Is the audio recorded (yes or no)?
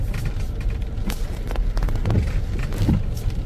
yes